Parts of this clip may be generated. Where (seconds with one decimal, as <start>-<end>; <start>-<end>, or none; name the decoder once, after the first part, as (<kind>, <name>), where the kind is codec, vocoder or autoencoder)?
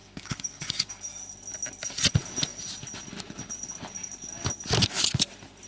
0.0-0.9 (codec, DAC)